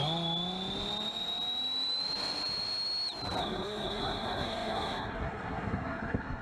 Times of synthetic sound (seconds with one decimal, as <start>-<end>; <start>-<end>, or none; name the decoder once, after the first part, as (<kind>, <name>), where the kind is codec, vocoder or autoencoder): 3.4-6.4 (codec, SNAC)